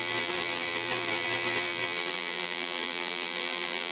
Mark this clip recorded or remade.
remade